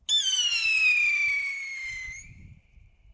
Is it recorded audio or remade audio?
recorded